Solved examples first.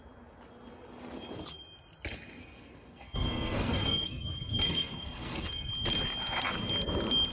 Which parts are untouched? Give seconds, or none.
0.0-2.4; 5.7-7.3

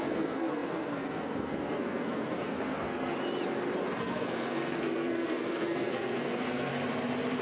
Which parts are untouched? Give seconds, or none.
3.1-4.0; 6.7-7.4

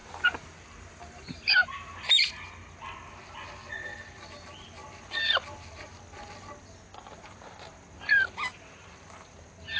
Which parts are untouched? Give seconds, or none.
2.3-9.8

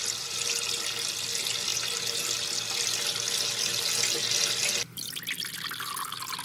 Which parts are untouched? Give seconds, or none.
0.0-6.4

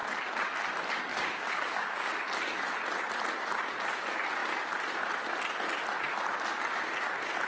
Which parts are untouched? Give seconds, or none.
0.0-1.1; 2.1-7.5

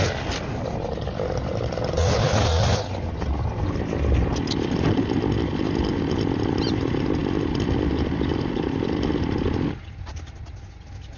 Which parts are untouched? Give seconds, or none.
0.0-11.2

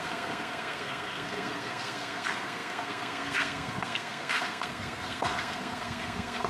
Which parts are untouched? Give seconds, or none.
none